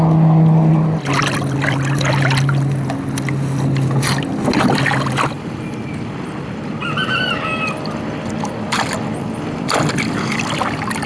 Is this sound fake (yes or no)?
no